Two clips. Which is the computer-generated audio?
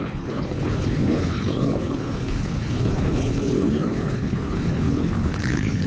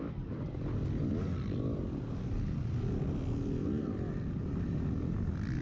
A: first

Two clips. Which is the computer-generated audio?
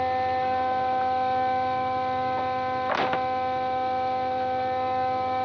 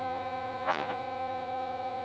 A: second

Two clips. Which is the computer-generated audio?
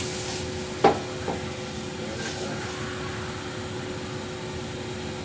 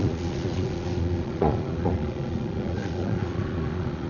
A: second